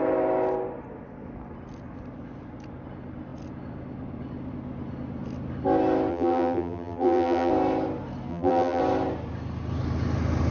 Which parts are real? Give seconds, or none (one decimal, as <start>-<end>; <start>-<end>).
0.0-6.1; 7.5-8.3; 8.8-10.5